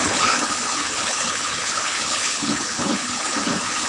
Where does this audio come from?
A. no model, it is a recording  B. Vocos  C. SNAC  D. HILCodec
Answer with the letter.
D